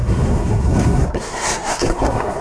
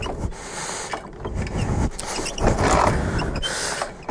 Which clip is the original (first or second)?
second